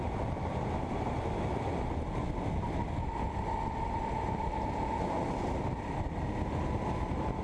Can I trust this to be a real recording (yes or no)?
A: yes